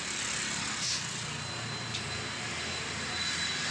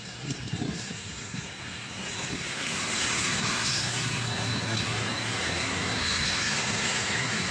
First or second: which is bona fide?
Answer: first